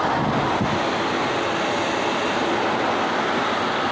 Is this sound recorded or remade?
recorded